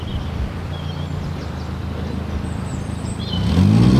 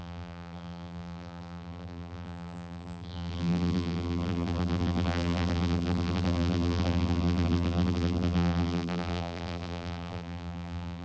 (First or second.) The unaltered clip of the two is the first